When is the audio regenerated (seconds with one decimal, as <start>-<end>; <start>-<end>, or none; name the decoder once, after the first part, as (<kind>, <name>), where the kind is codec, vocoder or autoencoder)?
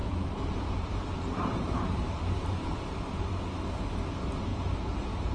0.0-3.2 (vocoder, BigVGAN v2); 4.5-5.3